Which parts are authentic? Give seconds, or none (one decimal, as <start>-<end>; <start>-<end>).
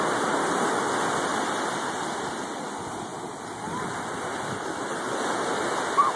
0.0-6.2